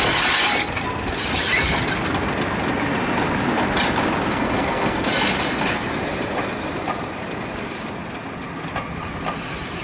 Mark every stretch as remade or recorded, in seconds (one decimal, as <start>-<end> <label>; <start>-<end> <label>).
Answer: 0.0-4.3 recorded; 4.3-5.1 remade; 5.1-9.8 recorded